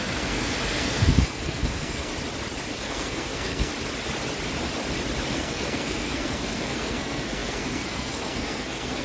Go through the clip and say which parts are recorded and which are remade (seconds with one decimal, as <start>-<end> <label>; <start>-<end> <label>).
0.0-2.1 remade; 2.1-2.7 recorded; 2.7-3.7 remade; 3.7-5.3 recorded; 5.3-9.0 remade